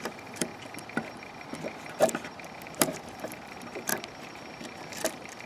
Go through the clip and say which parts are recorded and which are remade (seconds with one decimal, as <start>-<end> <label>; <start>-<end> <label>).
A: 0.0-0.5 remade; 0.5-2.6 recorded; 2.6-5.5 remade